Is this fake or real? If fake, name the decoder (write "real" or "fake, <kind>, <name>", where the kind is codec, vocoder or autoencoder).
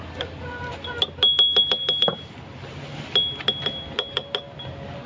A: real